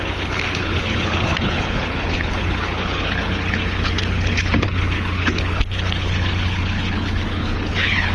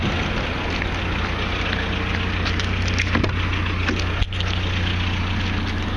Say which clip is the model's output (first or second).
first